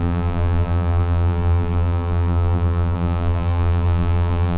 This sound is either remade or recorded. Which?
remade